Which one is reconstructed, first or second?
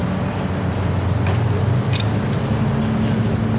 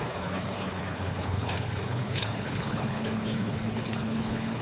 second